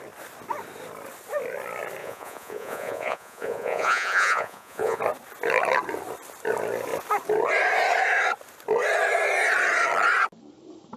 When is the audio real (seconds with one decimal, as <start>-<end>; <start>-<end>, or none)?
0.0-2.0; 5.0-11.0